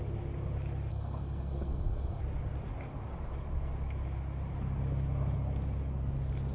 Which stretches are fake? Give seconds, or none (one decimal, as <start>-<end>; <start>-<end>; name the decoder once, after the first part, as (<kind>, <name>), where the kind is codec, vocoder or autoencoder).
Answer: 0.9-2.2 (codec, SNAC)